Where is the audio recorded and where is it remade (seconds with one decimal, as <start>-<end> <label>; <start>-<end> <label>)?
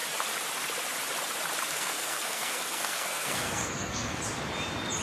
0.0-1.7 recorded; 1.7-4.2 remade; 4.2-5.0 recorded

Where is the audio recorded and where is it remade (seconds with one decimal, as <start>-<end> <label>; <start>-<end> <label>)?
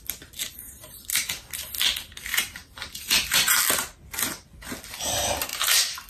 0.0-1.1 recorded; 1.1-1.6 remade; 1.6-2.3 recorded; 2.3-3.0 remade; 3.0-5.5 recorded; 5.5-6.1 remade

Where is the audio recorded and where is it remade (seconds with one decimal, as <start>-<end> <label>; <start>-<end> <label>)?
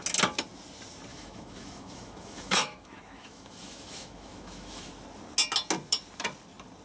0.0-1.1 recorded; 1.1-4.9 remade; 4.9-6.8 recorded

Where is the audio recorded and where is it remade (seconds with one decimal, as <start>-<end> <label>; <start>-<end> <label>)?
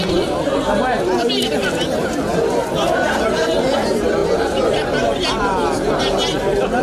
0.0-6.8 recorded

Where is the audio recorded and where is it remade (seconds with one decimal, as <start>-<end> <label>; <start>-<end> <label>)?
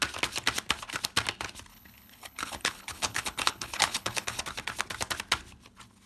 0.0-1.7 recorded; 1.7-4.4 remade; 4.4-6.1 recorded